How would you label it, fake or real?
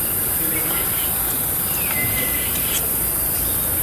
real